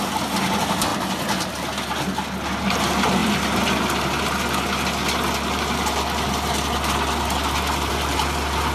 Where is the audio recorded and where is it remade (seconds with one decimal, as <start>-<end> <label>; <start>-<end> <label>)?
0.0-8.7 recorded